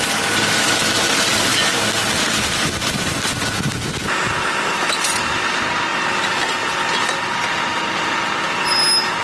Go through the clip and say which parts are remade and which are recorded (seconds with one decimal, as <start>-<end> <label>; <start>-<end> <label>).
0.0-9.2 recorded